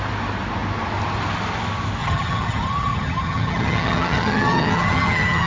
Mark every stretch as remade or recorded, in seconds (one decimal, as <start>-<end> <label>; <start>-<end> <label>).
0.0-2.0 recorded; 2.0-5.5 remade

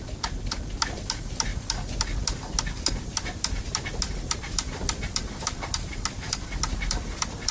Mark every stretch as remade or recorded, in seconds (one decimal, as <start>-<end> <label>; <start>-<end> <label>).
0.0-7.5 recorded

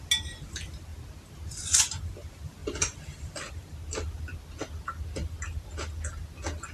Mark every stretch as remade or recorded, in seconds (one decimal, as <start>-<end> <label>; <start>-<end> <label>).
0.0-6.7 recorded

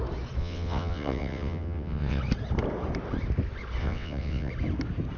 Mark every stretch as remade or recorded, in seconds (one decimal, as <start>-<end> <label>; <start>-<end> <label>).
0.0-0.4 recorded; 0.4-2.2 remade; 2.2-3.8 recorded; 3.8-4.5 remade; 4.5-5.2 recorded

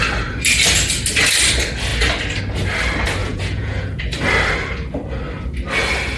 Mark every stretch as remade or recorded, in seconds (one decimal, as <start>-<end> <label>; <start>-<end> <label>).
0.0-3.2 recorded; 3.2-4.0 remade; 4.0-6.2 recorded

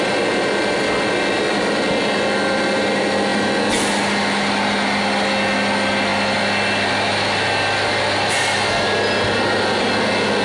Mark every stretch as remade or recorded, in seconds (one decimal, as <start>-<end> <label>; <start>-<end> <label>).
0.0-10.4 recorded

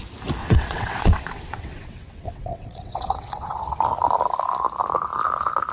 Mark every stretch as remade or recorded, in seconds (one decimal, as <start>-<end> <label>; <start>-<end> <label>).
0.0-0.4 recorded; 0.4-3.8 remade; 3.8-5.7 recorded